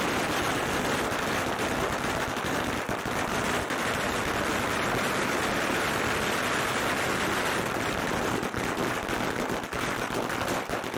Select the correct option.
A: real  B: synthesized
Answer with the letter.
A